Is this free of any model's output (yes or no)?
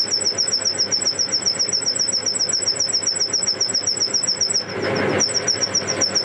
yes